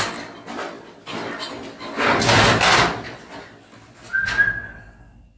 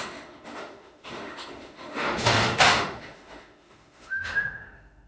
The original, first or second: first